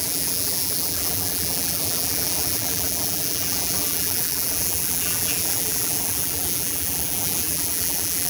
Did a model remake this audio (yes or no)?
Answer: yes